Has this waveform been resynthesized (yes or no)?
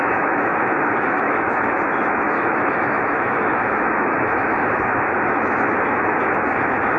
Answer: yes